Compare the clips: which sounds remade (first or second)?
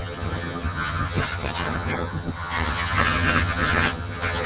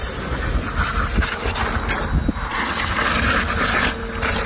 first